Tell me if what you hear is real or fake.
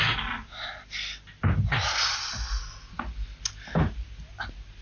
real